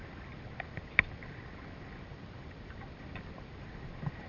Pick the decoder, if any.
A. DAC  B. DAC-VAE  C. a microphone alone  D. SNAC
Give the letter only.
C